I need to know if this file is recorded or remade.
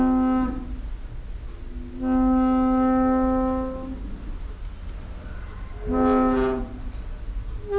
recorded